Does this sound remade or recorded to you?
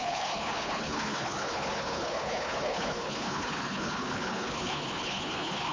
remade